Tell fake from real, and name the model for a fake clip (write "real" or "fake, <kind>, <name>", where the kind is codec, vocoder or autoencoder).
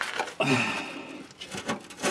real